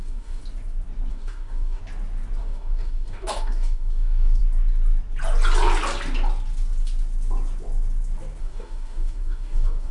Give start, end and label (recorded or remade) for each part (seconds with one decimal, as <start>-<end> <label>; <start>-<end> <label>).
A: 0.0-0.4 remade; 0.4-1.1 recorded; 1.1-1.8 remade; 1.8-2.4 recorded; 2.4-4.4 remade; 4.4-8.4 recorded; 8.4-9.9 remade